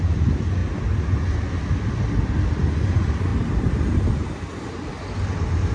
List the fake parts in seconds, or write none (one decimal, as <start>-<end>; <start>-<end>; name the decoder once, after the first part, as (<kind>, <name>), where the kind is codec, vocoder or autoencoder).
none